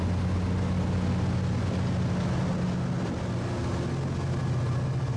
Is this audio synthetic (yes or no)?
no